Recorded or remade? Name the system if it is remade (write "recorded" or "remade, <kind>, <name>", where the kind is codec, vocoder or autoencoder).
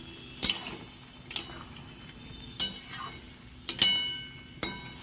recorded